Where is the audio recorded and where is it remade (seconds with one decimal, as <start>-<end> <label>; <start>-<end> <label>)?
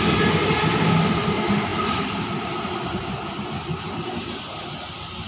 0.0-5.3 recorded